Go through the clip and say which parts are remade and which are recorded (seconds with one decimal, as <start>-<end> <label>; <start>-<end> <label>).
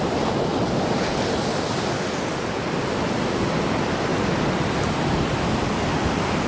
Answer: 0.0-6.5 recorded